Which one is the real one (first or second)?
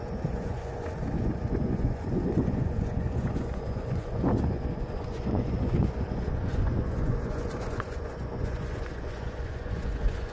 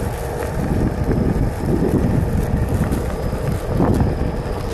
second